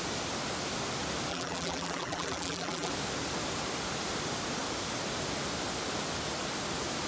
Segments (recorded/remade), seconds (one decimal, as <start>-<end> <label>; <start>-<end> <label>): 0.0-1.3 recorded; 1.3-2.9 remade; 2.9-7.1 recorded